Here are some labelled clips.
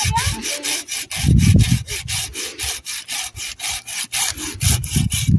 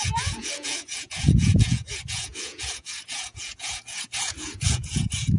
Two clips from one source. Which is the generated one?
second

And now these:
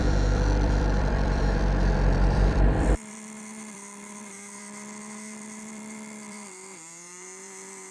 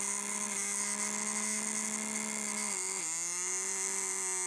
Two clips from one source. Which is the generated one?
first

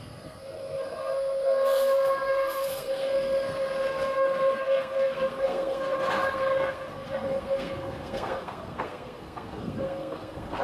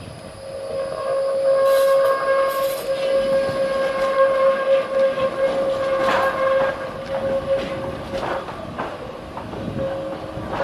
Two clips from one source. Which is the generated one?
first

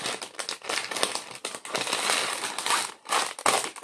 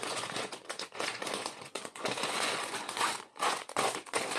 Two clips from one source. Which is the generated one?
second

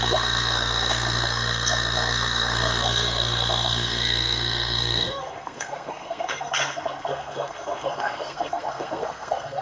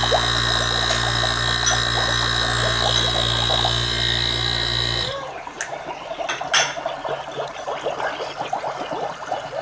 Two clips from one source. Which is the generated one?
first